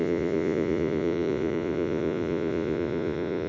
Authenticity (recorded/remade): remade